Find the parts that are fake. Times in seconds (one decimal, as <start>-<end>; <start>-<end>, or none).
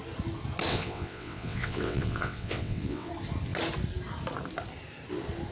0.7-3.1